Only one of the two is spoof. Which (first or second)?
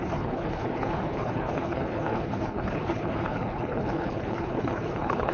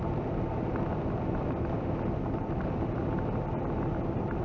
first